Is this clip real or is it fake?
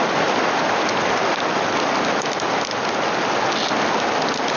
real